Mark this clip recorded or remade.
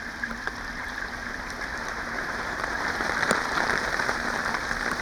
remade